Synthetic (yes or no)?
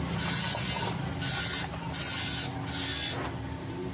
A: no